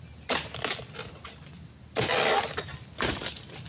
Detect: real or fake real